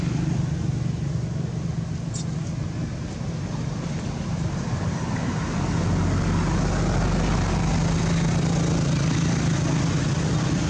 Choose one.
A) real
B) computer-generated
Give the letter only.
A